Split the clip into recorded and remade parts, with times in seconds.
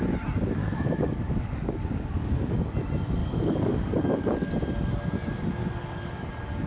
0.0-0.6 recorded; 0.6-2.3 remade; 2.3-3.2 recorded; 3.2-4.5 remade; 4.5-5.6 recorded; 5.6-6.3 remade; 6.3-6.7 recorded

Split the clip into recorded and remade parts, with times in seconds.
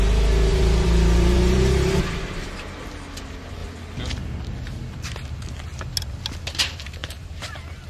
0.0-0.5 recorded; 0.5-2.0 remade; 2.0-7.0 recorded; 7.0-7.9 remade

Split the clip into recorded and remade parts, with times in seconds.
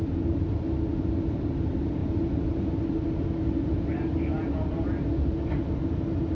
0.0-6.3 recorded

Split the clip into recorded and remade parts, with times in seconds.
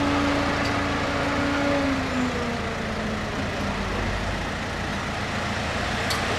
0.0-6.4 recorded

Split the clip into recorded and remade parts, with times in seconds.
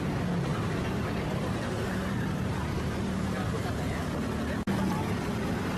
0.0-0.5 recorded; 0.5-4.0 remade; 4.0-5.8 recorded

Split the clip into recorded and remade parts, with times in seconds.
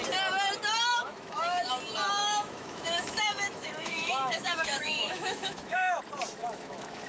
0.0-0.9 recorded; 0.9-1.7 remade; 1.7-2.2 recorded; 2.2-6.0 remade; 6.0-6.4 recorded; 6.4-7.1 remade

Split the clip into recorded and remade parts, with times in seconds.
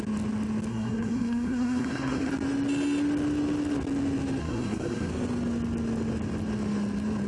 0.0-0.7 recorded; 0.7-2.3 remade; 2.3-4.4 recorded; 4.4-5.1 remade; 5.1-7.3 recorded